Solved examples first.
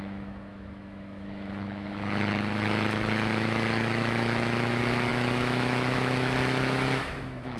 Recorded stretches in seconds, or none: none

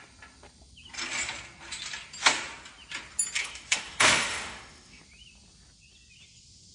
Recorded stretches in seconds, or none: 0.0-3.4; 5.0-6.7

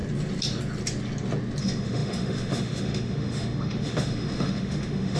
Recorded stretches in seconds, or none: 0.0-1.6

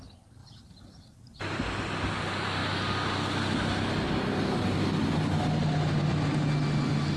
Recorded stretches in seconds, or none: 0.0-7.2

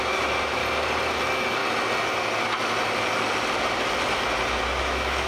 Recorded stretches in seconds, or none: 0.6-1.2; 1.6-4.8